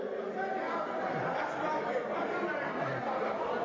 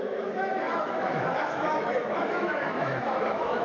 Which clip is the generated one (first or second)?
second